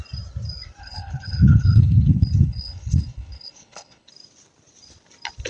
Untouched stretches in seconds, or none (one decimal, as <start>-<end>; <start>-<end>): 0.0-0.8; 4.1-5.5